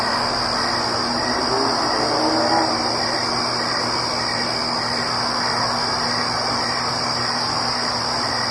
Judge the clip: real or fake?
real